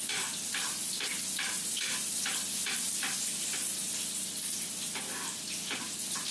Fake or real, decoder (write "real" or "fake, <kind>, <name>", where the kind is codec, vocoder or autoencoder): real